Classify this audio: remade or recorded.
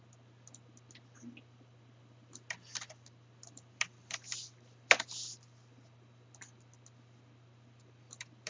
recorded